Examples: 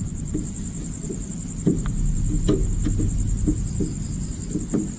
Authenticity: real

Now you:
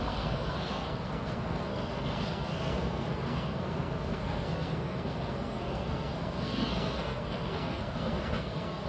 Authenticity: fake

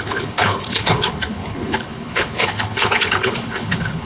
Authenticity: fake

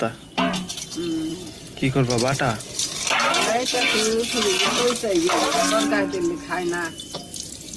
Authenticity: real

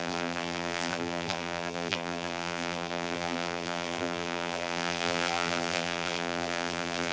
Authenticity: fake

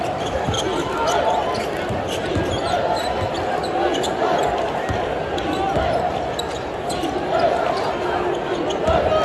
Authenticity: real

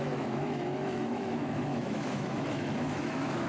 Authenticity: fake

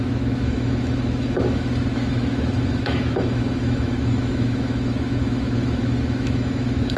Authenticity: fake